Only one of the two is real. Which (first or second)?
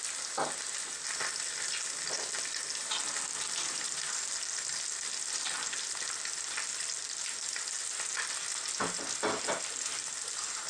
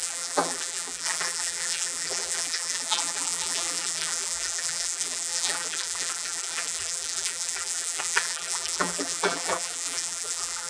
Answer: first